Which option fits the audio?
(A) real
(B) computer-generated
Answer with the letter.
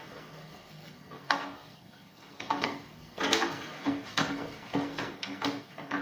B